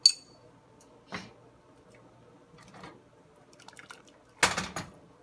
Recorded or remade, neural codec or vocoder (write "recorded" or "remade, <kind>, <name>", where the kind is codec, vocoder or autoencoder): recorded